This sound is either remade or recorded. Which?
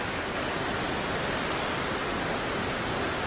recorded